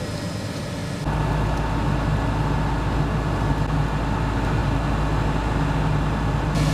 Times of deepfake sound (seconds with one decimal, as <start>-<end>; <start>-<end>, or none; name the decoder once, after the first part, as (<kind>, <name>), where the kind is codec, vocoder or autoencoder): none